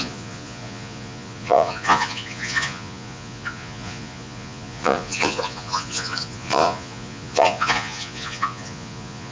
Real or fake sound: fake